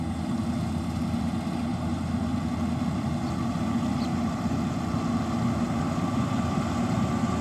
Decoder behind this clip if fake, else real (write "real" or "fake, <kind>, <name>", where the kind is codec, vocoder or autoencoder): real